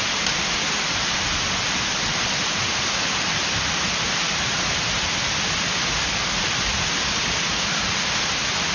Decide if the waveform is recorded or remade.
remade